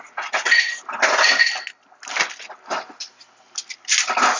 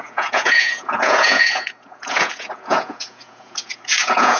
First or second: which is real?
first